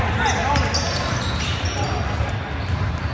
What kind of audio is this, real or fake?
real